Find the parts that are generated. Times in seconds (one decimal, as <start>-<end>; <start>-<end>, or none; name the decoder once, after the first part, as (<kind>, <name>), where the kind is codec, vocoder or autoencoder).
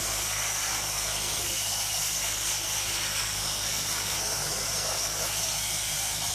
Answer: 0.0-6.3 (codec, SNAC)